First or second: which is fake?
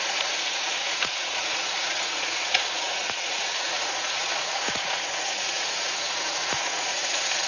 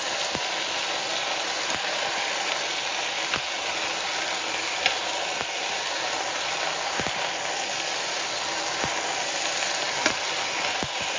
first